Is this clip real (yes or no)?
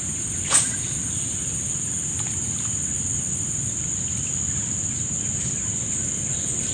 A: yes